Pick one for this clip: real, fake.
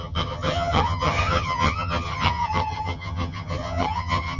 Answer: fake